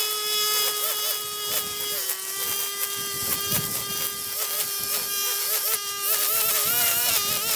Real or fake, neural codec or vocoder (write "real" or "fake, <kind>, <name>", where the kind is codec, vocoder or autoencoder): real